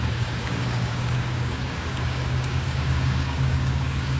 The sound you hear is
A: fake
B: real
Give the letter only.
A